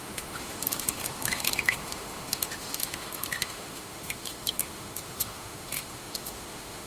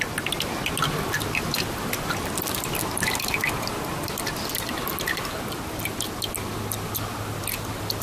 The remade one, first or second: first